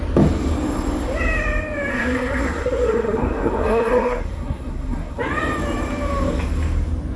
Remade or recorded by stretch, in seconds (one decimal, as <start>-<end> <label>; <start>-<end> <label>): 0.0-1.9 recorded; 1.9-5.2 remade; 5.2-7.2 recorded